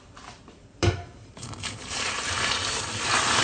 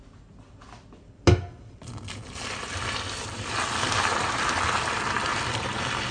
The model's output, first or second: first